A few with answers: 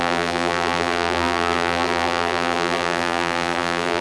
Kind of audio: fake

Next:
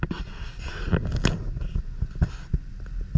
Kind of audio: real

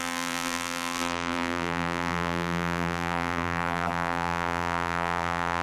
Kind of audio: fake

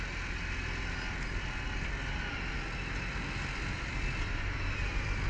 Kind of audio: real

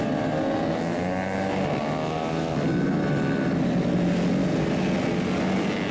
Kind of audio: real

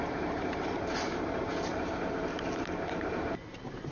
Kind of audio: fake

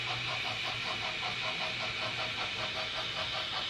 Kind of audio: real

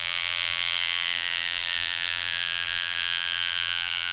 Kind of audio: fake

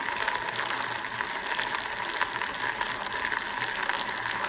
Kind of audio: real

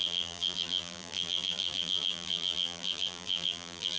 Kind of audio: fake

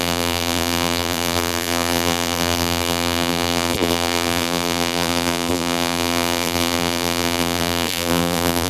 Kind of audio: fake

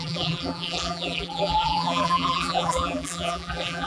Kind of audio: fake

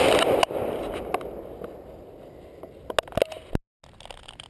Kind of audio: real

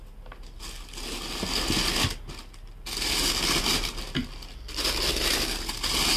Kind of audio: real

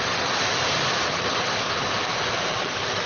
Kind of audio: fake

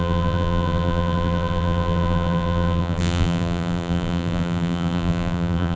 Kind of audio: fake